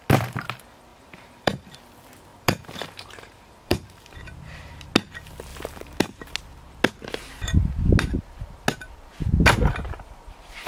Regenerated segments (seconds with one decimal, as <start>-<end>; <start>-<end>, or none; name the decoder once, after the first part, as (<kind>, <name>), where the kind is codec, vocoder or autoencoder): 0.9-1.7 (vocoder, BigVGAN v2); 2.3-4.9; 5.5-6.3

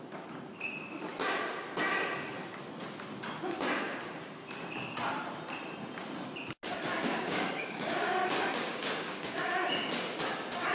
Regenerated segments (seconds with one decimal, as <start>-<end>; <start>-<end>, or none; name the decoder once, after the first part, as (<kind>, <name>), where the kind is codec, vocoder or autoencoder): 6.9-9.6 (codec, DAC)

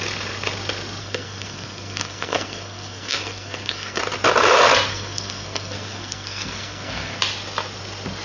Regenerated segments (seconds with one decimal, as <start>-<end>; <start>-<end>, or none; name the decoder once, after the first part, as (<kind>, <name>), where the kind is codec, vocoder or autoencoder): 1.0-4.0 (codec, SNAC); 4.9-7.2

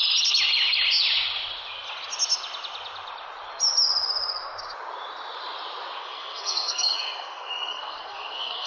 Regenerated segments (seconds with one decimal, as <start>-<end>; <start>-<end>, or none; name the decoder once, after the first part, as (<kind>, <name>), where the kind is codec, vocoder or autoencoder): 6.0-8.7 (codec, SNAC)

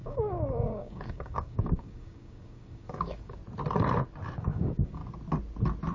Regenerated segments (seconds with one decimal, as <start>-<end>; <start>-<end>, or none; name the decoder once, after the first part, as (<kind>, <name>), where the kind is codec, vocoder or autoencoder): 0.0-3.4 (codec, DAC); 4.4-5.0